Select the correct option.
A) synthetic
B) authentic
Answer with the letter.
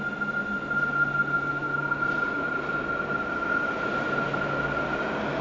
B